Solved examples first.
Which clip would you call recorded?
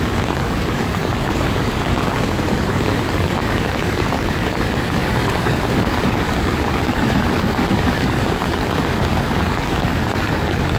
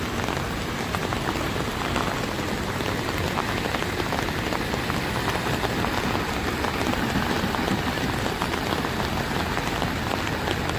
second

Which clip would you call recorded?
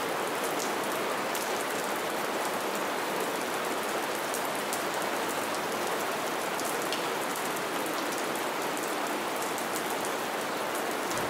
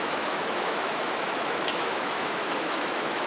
first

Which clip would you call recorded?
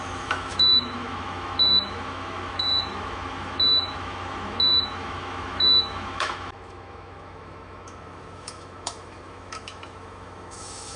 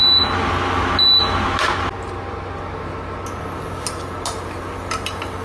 second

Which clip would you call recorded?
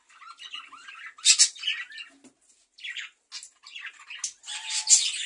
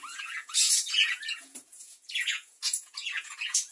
first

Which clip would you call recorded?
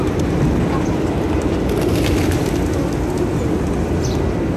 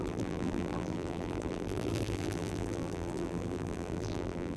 first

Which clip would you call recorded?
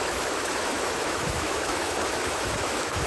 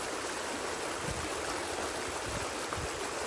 second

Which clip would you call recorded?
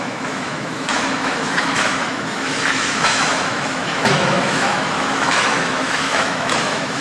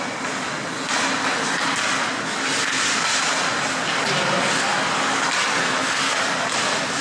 second